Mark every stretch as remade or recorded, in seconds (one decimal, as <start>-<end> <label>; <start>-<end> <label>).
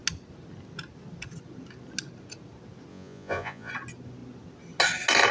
0.0-2.9 recorded; 2.9-3.7 remade; 3.7-5.3 recorded